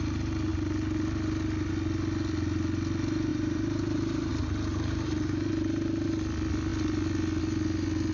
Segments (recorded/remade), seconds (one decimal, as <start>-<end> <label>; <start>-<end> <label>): 0.0-3.3 recorded; 3.3-4.3 remade; 4.3-4.7 recorded; 4.7-5.5 remade; 5.5-8.1 recorded